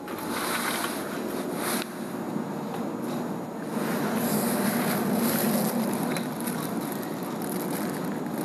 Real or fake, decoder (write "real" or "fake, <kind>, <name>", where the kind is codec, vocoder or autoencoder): real